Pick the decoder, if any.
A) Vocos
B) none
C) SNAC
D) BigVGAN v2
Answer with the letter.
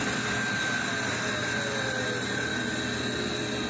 B